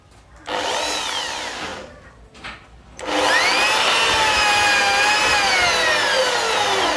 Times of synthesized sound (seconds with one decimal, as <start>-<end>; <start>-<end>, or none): none